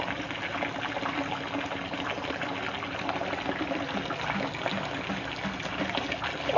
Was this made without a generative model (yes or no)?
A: yes